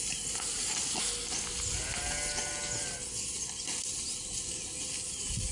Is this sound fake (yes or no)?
no